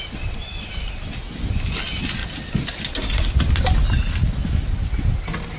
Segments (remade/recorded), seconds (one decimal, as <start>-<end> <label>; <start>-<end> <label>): 0.0-0.5 recorded; 0.5-1.8 remade; 1.8-5.6 recorded

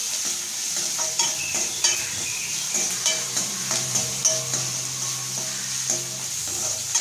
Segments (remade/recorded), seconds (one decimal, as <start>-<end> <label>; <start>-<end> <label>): 0.0-0.7 recorded; 0.7-4.2 remade; 4.2-6.3 recorded; 6.3-7.0 remade

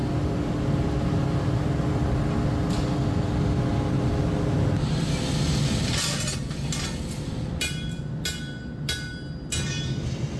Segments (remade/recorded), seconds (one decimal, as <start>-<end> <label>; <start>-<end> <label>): 0.0-10.4 recorded